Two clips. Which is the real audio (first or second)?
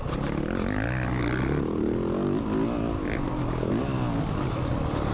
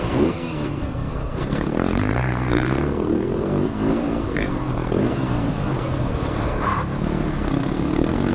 first